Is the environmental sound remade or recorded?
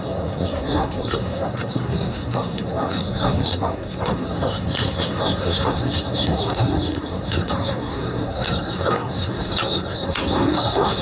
remade